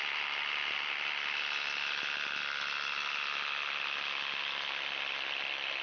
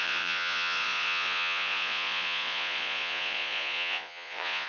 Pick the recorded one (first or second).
first